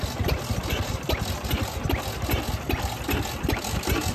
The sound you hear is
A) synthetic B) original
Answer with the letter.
B